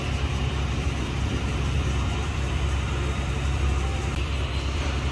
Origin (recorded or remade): remade